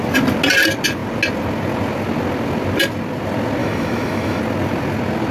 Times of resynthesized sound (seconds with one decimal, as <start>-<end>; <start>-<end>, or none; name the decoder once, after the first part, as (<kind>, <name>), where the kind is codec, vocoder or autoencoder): 3.6-4.4 (autoencoder, DAC-VAE)